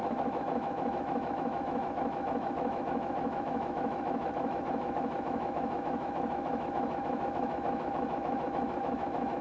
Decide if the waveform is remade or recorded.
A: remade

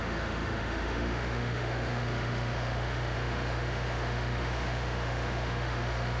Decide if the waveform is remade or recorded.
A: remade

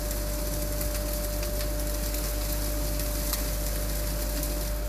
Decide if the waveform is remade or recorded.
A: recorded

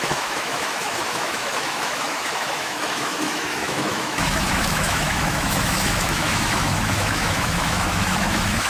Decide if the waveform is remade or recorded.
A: remade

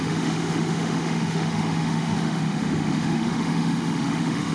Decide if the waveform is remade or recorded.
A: remade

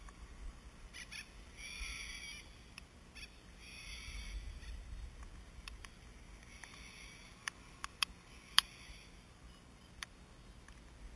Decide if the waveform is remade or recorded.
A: recorded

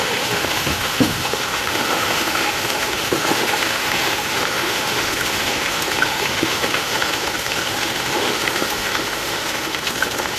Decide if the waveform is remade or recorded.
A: remade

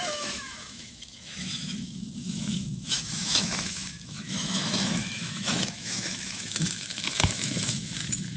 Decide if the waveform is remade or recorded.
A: remade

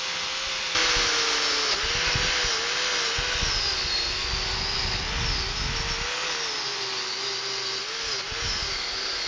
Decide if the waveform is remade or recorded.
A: recorded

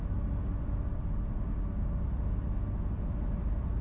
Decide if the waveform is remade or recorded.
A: recorded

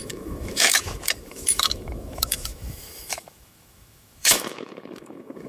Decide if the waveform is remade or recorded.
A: remade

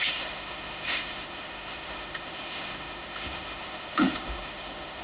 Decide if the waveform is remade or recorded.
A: remade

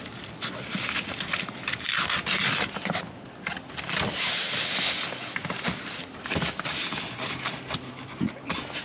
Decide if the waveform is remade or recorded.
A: recorded